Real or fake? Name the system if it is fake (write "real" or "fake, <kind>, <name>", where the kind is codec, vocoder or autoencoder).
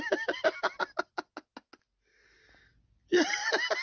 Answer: real